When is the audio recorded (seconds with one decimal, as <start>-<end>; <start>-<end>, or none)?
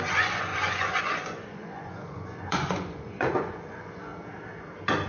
4.1-5.1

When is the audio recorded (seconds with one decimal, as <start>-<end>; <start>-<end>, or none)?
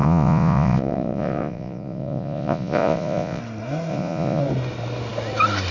3.4-3.9; 4.4-5.7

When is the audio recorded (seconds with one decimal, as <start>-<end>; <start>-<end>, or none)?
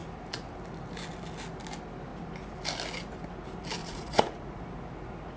0.0-3.8; 4.6-5.4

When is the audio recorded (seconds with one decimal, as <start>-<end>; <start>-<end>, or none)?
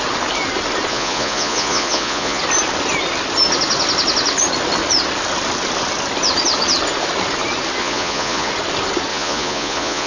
0.0-0.9; 2.4-7.8; 8.5-9.1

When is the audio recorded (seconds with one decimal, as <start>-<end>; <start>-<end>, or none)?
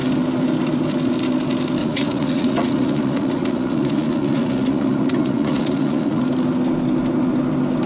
0.0-1.8; 6.2-7.9